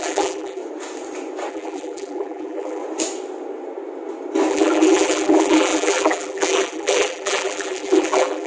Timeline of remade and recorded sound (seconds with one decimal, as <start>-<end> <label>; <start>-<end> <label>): 0.0-0.6 remade; 0.6-1.5 recorded; 1.5-2.8 remade; 2.8-4.5 recorded; 4.5-8.5 remade